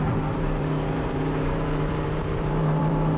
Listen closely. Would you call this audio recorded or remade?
remade